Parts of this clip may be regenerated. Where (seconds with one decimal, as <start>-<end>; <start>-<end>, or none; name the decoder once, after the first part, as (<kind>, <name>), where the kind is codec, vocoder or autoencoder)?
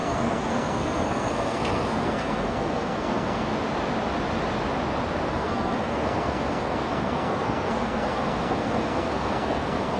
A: 0.0-3.5 (codec, SNAC); 5.3-10.0